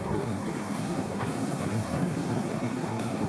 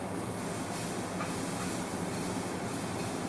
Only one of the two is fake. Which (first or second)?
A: first